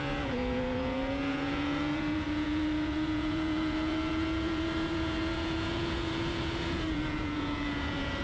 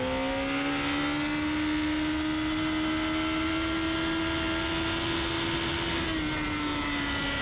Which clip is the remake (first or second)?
first